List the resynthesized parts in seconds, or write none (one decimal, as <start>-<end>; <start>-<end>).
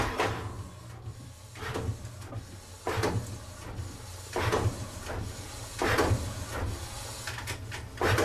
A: 1.1-2.3